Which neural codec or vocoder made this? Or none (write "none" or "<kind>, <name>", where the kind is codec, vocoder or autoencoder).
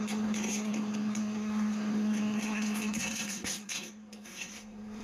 codec, SNAC